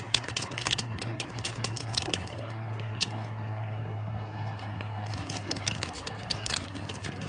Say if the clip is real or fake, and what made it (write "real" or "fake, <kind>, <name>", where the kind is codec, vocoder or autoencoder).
fake, codec, SNAC